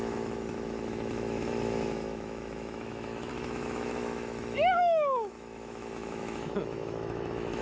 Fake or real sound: fake